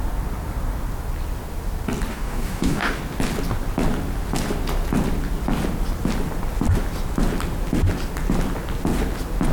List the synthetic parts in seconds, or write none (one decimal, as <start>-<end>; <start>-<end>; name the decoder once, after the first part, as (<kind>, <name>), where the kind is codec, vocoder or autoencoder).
2.1-3.0 (codec, DAC)

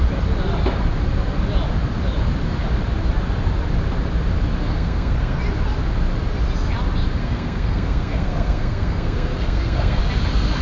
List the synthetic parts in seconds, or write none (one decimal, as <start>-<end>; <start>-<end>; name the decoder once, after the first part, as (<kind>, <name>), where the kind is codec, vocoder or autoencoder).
4.7-5.4 (codec, SNAC); 7.2-10.0

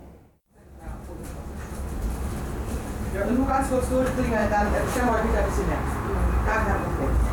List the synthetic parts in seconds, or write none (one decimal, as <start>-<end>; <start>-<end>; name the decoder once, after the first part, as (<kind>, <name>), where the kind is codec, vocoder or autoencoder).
4.4-5.0 (vocoder, BigVGAN v2); 6.5-7.3